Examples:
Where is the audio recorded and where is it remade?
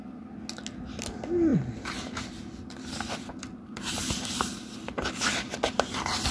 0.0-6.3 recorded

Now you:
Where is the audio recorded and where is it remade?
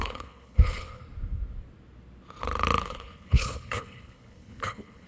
0.0-1.0 remade; 1.0-2.8 recorded; 2.8-5.1 remade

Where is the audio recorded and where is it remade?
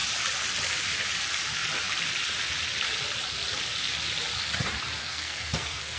0.0-5.0 recorded; 5.0-6.0 remade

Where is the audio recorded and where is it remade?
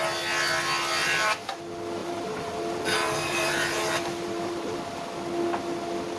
0.0-1.0 recorded; 1.0-1.6 remade; 1.6-2.0 recorded; 2.0-4.8 remade; 4.8-6.2 recorded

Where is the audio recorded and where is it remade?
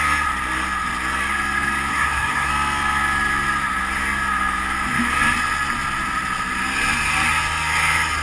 0.0-1.9 recorded; 1.9-2.5 remade; 2.5-8.2 recorded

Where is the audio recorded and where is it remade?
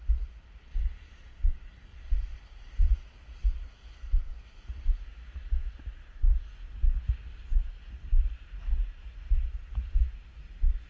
0.0-1.9 recorded; 1.9-3.0 remade; 3.0-10.9 recorded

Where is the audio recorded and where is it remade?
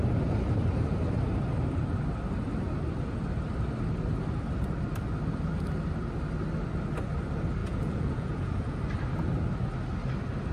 0.0-7.6 recorded; 7.6-8.8 remade; 8.8-10.5 recorded